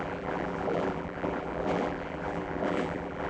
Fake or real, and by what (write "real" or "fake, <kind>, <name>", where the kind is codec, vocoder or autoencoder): fake, vocoder, BigVGAN v2